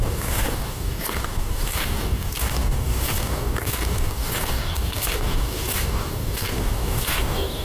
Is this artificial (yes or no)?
yes